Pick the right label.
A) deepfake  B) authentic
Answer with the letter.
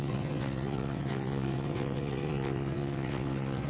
A